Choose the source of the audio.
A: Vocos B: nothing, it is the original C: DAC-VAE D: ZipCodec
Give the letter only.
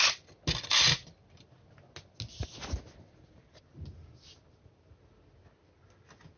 B